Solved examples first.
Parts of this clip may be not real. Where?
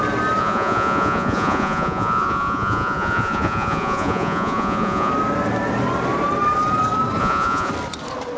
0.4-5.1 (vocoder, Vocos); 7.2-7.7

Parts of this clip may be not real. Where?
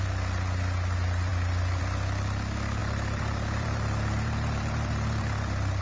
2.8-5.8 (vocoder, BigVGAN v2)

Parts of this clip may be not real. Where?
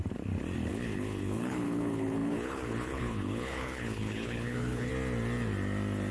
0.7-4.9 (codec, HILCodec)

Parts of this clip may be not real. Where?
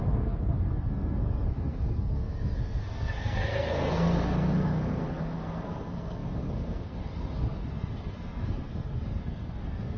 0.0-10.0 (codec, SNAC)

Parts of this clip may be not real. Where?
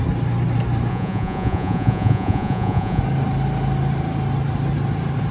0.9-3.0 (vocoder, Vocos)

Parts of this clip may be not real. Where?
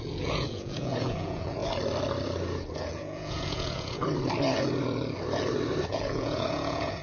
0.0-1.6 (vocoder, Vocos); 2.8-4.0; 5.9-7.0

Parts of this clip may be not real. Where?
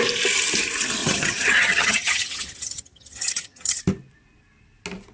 1.0-3.8 (vocoder, HiFi-GAN)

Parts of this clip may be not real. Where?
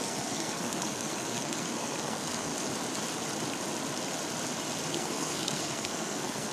0.0-2.5 (codec, SNAC); 4.9-6.5